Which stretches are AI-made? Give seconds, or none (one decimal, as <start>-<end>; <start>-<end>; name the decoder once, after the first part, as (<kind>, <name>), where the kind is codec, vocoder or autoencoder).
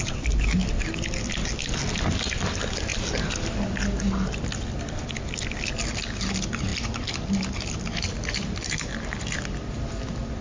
none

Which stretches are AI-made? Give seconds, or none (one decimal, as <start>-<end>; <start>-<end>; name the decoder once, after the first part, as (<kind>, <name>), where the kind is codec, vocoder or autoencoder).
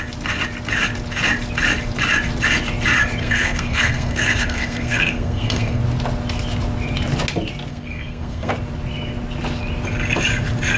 3.2-5.8 (codec, SNAC); 7.7-8.5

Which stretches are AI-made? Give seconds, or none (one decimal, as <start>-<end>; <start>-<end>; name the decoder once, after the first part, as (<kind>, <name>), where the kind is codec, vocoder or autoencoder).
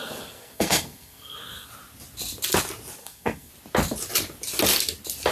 0.0-1.7 (codec, SNAC); 3.0-3.5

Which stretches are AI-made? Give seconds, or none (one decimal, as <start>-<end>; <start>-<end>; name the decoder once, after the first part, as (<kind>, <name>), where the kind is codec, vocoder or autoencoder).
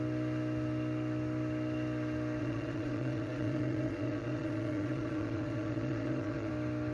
2.4-6.5 (vocoder, Vocos)